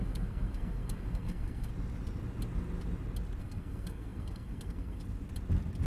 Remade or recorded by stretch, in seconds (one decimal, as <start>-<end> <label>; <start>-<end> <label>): 0.0-1.7 remade; 1.7-3.4 recorded; 3.4-5.0 remade; 5.0-5.9 recorded